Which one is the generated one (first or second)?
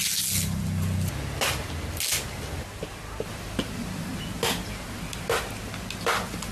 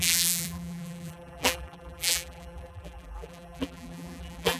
second